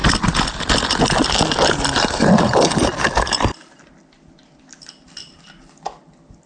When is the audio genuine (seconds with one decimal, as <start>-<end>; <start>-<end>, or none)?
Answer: 0.0-6.5